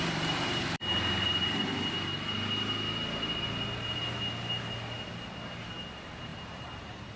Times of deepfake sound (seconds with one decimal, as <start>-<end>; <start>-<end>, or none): 0.0-1.7; 5.7-7.2